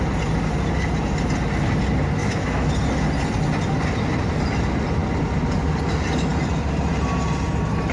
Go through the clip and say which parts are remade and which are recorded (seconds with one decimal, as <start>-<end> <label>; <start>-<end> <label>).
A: 0.0-2.2 recorded; 2.2-2.7 remade; 2.7-7.9 recorded